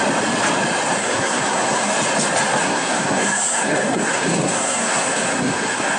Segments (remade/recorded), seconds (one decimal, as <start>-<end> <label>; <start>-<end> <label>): 0.0-1.0 recorded; 1.0-1.9 remade; 1.9-2.6 recorded; 2.6-6.0 remade